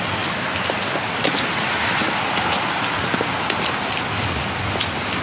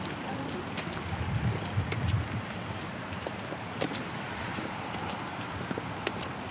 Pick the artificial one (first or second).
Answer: second